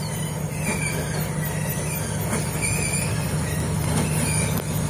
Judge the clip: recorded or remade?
recorded